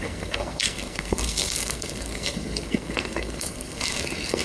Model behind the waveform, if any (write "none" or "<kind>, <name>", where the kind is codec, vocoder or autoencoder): codec, SNAC